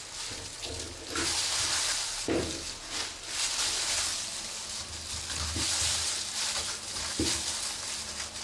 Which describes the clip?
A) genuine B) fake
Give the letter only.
A